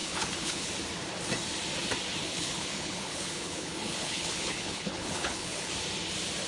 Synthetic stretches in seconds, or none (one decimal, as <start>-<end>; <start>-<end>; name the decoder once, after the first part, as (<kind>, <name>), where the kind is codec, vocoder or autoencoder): 0.0-0.7 (codec, HILCodec); 2.2-5.7